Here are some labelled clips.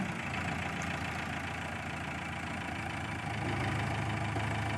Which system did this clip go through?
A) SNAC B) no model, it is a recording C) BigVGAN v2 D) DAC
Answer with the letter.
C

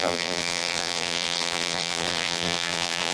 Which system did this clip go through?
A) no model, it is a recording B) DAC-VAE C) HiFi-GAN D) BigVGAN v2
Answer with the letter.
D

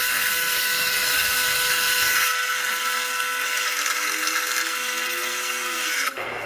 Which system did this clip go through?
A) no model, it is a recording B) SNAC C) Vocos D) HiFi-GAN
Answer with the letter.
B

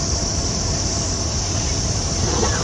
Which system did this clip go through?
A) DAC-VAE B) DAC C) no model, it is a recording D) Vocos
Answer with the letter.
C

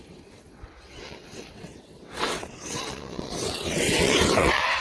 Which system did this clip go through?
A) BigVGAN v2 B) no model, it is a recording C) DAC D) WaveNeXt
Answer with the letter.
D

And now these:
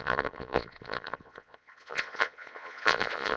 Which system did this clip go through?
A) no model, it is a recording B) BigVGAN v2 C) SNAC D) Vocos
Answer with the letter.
D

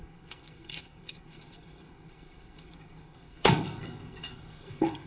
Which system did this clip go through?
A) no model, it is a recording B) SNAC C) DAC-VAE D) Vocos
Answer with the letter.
B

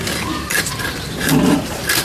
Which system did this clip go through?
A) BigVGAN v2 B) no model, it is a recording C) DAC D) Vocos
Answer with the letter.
A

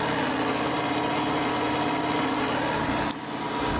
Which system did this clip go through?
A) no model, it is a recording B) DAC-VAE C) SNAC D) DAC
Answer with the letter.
A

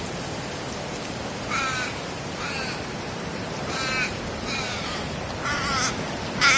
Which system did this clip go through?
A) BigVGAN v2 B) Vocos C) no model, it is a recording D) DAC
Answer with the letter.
C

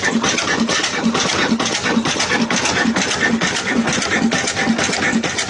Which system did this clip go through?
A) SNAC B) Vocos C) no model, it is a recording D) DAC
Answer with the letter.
C